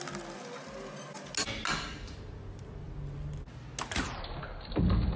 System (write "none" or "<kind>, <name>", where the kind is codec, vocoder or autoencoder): none